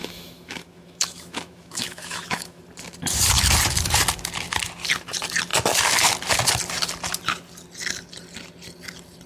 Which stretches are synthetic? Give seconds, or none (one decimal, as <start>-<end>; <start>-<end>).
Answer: 0.0-2.6